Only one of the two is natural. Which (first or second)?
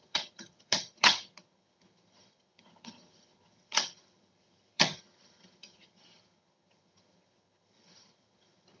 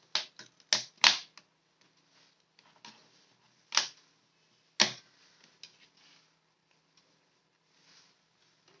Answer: second